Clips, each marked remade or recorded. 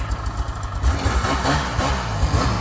recorded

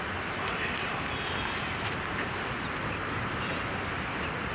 recorded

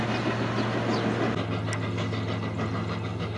recorded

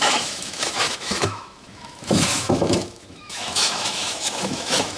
remade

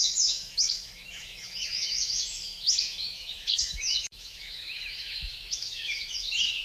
remade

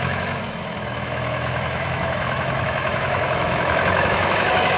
remade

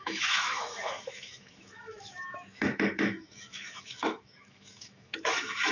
remade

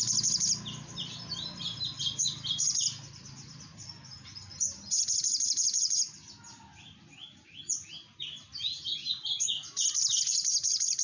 recorded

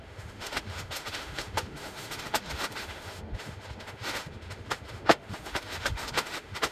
remade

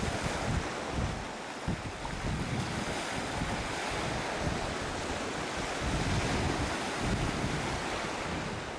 recorded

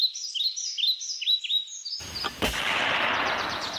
recorded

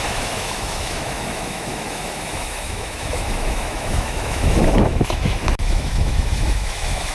remade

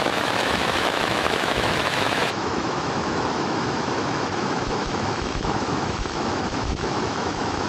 remade